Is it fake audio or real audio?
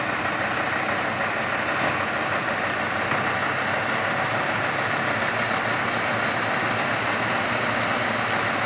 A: real